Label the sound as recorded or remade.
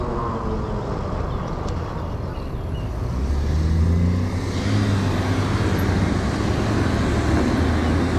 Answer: recorded